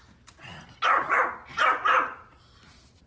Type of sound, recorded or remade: recorded